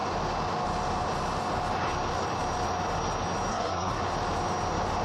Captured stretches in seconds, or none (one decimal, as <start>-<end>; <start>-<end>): 0.0-3.5; 4.0-5.0